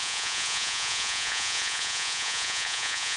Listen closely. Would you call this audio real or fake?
fake